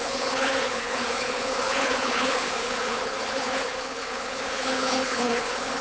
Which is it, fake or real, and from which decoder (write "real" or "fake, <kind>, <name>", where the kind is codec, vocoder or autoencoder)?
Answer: fake, codec, HILCodec